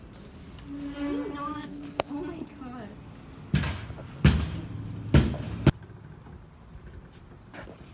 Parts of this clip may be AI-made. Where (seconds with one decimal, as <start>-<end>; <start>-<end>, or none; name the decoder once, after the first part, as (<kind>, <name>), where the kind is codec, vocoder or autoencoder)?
1.4-2.1 (codec, SNAC)